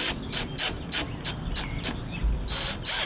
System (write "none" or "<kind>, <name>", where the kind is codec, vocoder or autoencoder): none